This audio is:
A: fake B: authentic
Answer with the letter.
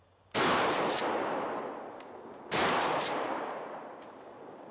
B